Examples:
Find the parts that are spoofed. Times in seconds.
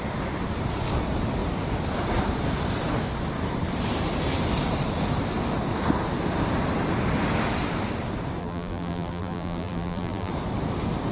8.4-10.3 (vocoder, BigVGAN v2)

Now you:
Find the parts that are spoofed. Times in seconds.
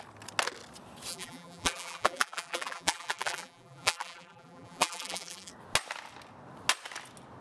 1.1-5.5 (vocoder, BigVGAN v2)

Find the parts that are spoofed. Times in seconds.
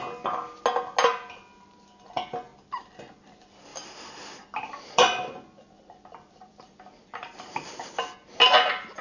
3.7-7.9 (vocoder, BigVGAN v2)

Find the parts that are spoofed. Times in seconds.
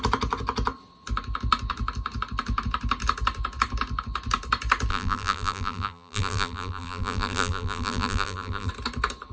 4.9-8.7 (vocoder, BigVGAN v2)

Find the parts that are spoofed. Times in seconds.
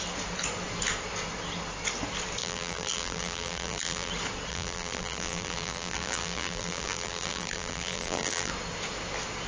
2.4-4.1 (vocoder, BigVGAN v2); 4.5-8.5